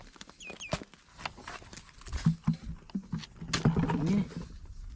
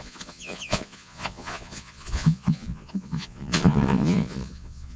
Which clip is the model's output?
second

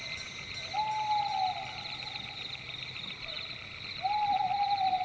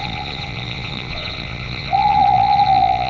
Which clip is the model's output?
second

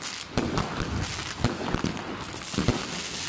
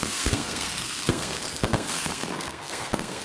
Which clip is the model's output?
second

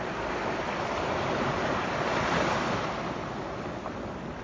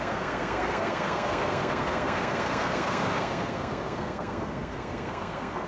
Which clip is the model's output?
second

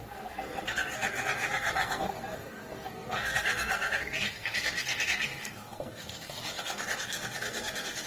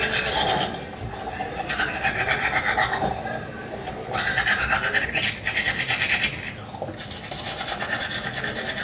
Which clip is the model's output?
first